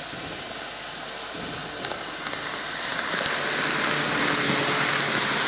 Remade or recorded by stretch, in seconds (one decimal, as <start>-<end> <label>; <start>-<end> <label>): 0.0-5.5 recorded